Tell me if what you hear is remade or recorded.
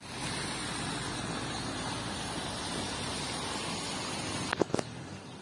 recorded